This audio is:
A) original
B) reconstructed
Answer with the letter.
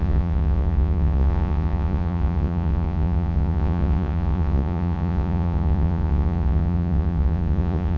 B